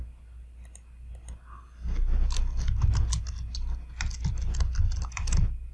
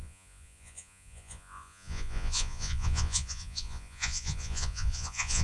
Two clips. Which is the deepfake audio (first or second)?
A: second